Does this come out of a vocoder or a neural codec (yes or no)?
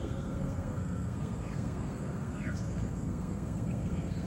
yes